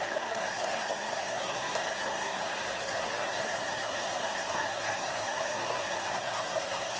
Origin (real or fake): fake